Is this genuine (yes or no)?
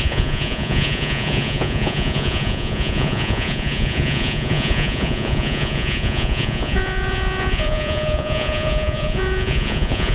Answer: no